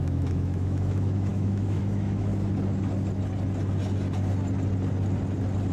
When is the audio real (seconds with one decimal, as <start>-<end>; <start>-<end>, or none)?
2.3-5.7

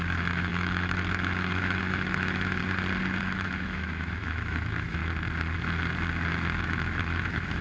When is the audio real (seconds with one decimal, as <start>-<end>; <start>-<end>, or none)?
2.6-3.2; 5.0-6.6

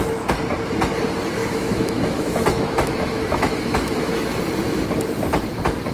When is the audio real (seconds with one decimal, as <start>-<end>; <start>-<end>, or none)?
0.0-1.4; 4.4-5.9

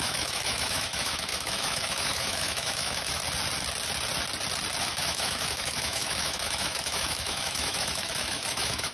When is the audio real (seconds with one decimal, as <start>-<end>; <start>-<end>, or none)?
3.2-4.8

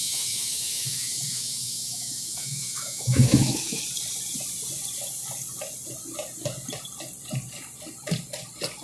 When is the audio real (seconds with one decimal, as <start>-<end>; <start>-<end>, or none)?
3.8-8.8